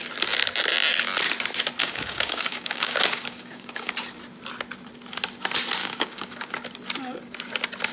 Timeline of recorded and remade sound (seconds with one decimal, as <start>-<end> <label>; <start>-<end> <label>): 0.0-1.8 recorded; 1.8-3.9 remade; 3.9-5.8 recorded; 5.8-6.5 remade; 6.5-7.9 recorded